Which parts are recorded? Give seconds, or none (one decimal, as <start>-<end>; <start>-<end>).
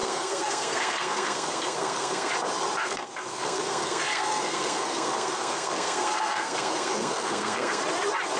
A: 2.3-2.8; 7.8-8.4